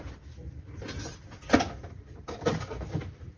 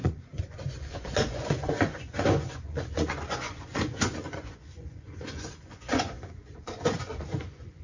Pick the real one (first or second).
first